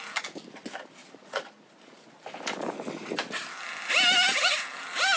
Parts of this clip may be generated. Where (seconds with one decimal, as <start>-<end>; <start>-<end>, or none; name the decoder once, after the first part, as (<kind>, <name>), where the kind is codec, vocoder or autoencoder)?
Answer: 1.0-2.1 (vocoder, Vocos)